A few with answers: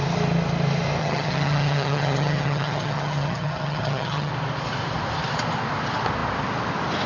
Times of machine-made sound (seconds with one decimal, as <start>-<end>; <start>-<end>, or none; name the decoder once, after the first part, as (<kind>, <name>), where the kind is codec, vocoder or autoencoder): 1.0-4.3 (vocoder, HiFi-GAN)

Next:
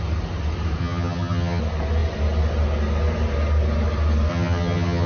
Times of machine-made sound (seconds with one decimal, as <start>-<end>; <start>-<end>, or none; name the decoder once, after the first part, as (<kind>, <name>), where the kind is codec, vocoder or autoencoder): 0.8-1.6 (vocoder, HiFi-GAN); 4.3-5.1

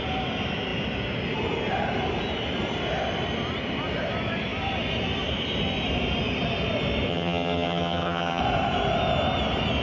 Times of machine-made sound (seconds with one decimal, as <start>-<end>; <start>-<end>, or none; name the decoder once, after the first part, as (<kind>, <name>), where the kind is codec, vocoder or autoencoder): 7.1-8.4 (vocoder, HiFi-GAN)